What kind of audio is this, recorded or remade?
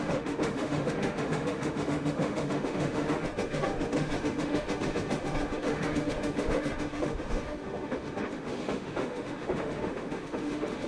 remade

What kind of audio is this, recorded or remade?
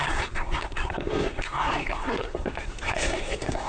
remade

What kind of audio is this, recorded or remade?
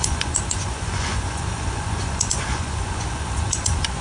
remade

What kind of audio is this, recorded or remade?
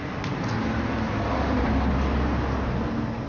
recorded